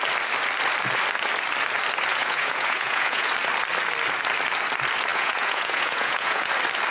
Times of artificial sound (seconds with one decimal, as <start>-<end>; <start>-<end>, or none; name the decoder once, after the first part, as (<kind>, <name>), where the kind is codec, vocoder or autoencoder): 2.1-3.3 (vocoder, Vocos); 5.1-6.5